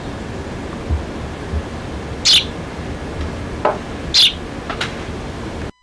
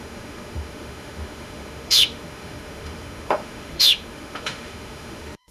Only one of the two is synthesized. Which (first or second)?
second